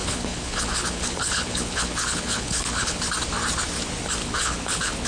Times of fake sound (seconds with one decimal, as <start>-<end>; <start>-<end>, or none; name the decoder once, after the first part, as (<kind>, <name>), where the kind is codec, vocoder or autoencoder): 0.0-3.0 (codec, HILCodec); 4.2-5.1